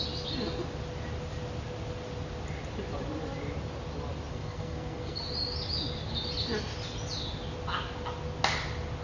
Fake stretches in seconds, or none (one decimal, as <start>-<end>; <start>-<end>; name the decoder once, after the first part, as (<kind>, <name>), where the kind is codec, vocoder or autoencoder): 4.3-5.2 (codec, SNAC)